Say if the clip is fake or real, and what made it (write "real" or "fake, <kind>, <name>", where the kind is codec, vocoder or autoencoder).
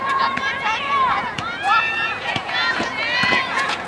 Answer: fake, vocoder, Vocos